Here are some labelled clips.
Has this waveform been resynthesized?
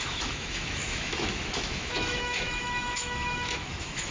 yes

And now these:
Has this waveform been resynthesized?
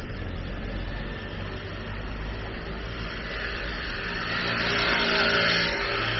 no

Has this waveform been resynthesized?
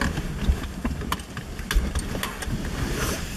no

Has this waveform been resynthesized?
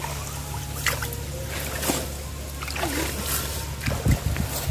no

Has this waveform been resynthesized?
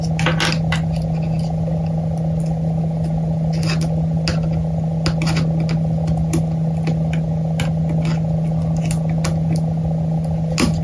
no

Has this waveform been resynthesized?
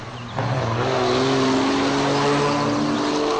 no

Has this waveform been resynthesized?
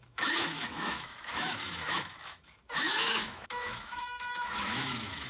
yes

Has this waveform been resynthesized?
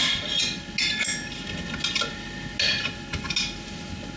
no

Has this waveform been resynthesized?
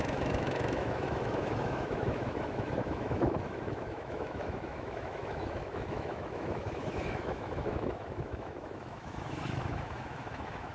yes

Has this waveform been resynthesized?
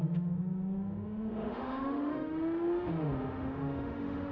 yes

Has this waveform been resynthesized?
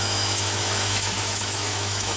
yes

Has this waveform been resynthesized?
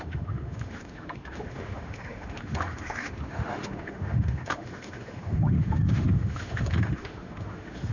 yes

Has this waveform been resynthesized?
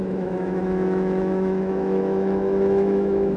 yes